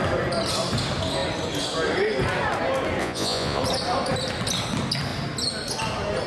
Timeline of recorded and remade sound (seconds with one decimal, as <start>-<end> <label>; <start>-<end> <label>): 0.0-3.0 recorded; 3.0-3.6 remade; 3.6-6.3 recorded